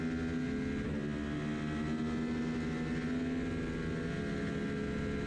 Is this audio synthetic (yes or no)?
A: no